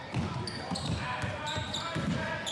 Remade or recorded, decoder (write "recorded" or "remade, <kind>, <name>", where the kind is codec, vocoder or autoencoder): recorded